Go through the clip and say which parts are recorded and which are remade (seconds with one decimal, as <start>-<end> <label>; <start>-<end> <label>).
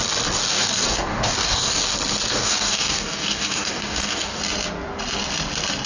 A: 0.0-0.5 recorded; 0.5-1.8 remade; 1.8-2.3 recorded; 2.3-4.4 remade; 4.4-5.9 recorded